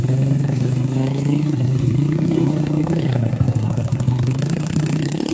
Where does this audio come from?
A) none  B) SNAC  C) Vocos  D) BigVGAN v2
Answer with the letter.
B